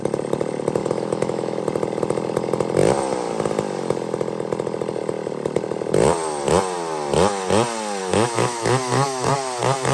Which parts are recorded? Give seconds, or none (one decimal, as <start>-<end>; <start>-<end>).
0.0-0.8; 1.6-8.0; 9.3-9.9